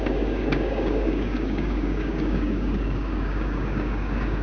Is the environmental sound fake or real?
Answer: fake